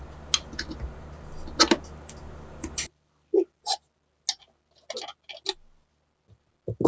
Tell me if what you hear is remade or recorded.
recorded